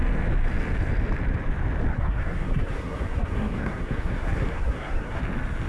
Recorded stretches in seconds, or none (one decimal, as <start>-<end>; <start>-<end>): 0.0-1.9; 5.2-5.7